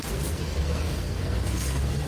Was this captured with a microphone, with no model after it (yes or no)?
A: no